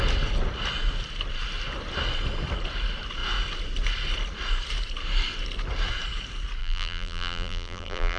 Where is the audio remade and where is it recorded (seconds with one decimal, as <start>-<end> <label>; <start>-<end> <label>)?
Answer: 0.0-6.6 recorded; 6.6-8.2 remade

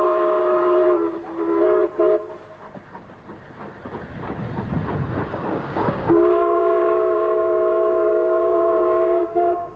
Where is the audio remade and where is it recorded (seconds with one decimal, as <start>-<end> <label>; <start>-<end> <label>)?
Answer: 0.0-0.4 remade; 0.4-5.3 recorded; 5.3-9.8 remade

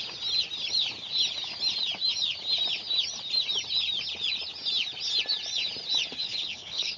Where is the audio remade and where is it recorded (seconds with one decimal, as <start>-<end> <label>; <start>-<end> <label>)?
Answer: 0.0-6.2 recorded; 6.2-7.0 remade

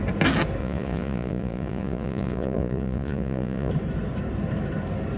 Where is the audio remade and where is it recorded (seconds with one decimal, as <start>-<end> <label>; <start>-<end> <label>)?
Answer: 0.0-0.6 recorded; 0.6-3.7 remade; 3.7-5.2 recorded